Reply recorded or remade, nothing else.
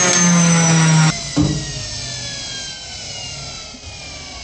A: recorded